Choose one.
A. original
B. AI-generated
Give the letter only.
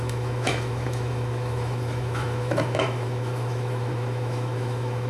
B